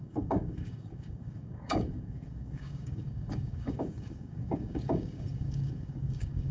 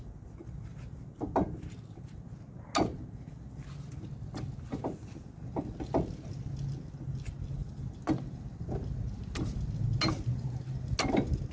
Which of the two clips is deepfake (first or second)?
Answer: first